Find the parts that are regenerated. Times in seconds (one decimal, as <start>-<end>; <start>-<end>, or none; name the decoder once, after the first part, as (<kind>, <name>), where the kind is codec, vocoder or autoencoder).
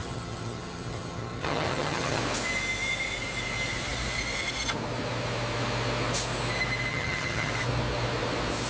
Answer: 0.0-2.2 (vocoder, HiFi-GAN); 6.9-7.5